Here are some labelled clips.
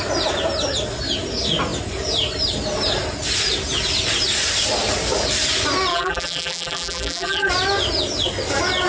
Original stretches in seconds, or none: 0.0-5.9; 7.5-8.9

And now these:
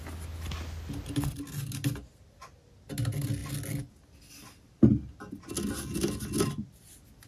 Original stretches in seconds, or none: 0.0-7.3

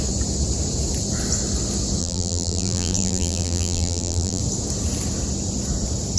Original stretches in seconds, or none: 0.0-2.0; 4.4-6.2

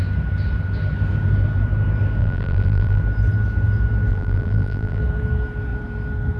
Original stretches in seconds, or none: 0.0-2.2; 3.0-4.1; 5.0-6.4

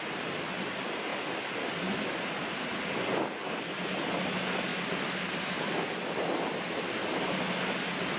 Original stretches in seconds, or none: 0.0-3.4; 4.1-4.7; 7.7-8.2

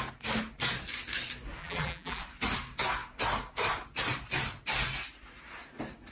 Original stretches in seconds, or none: 0.0-1.6; 2.2-6.1